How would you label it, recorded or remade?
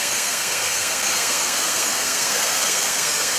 remade